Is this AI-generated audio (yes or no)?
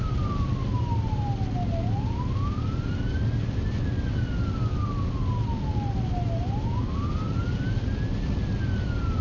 no